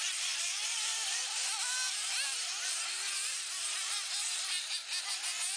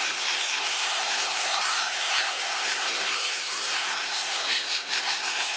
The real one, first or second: first